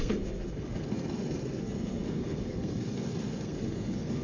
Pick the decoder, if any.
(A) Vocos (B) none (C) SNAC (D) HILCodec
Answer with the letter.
C